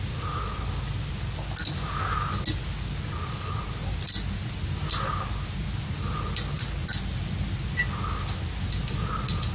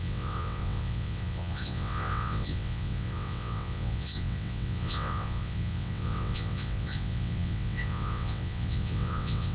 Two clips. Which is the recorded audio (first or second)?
first